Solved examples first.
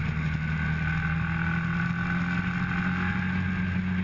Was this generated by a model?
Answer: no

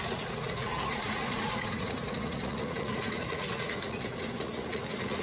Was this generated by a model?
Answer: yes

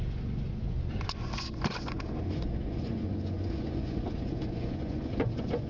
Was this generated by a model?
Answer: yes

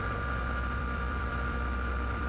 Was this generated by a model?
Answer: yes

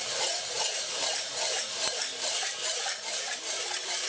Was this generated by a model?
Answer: yes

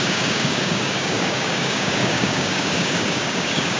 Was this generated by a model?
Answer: yes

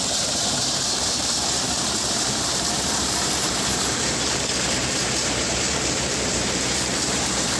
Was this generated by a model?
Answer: yes